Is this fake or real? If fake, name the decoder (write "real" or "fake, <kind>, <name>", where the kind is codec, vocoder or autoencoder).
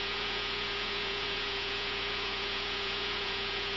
fake, vocoder, Vocos